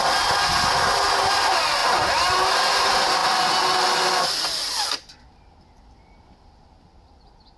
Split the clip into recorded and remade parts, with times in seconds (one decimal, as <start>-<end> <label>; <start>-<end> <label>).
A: 0.0-7.6 recorded